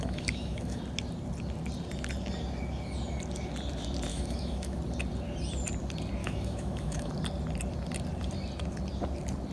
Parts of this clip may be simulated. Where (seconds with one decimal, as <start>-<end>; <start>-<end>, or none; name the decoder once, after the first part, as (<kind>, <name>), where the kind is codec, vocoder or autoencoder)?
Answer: 0.0-0.8 (autoencoder, DAC-VAE); 4.1-4.8; 6.2-7.1